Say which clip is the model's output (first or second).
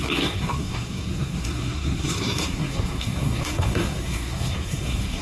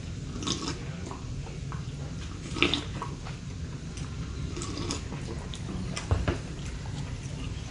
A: first